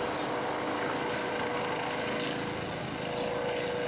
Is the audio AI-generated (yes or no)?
no